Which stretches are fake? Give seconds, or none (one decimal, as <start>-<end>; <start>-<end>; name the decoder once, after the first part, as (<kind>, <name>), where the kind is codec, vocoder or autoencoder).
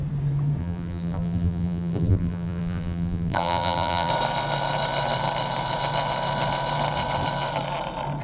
0.6-4.1 (vocoder, BigVGAN v2)